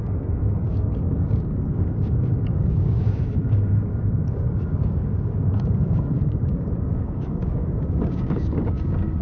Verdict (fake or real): fake